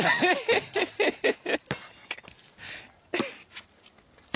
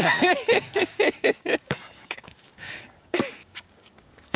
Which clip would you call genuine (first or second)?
first